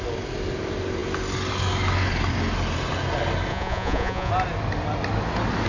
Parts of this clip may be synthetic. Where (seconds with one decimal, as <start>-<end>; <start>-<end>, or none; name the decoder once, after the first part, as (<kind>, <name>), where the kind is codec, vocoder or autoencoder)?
3.5-4.3 (vocoder, Vocos)